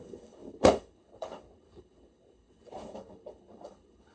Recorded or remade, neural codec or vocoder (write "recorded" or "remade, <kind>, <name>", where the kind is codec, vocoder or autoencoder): remade, codec, HILCodec